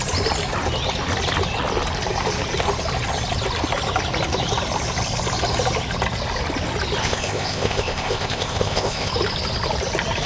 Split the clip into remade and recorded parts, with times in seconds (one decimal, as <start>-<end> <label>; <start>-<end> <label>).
0.0-7.0 recorded; 7.0-9.1 remade; 9.1-10.3 recorded